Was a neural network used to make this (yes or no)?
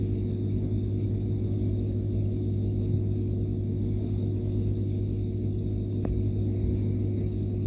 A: yes